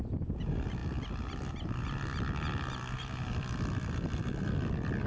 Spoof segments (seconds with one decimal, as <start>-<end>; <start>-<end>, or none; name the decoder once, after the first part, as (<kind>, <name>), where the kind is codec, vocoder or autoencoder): none